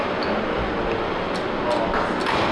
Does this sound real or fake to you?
real